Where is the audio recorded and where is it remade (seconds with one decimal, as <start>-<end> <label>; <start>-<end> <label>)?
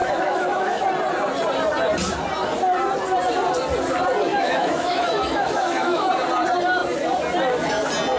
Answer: 0.0-0.8 remade; 0.8-4.3 recorded; 4.3-6.1 remade; 6.1-8.2 recorded